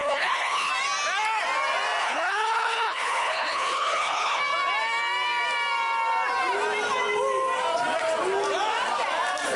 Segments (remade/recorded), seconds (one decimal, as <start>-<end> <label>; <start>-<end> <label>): 0.0-0.7 remade; 0.7-2.0 recorded; 2.0-4.4 remade; 4.4-9.6 recorded